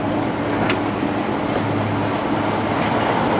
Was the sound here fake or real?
real